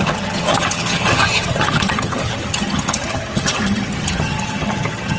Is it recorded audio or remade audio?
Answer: remade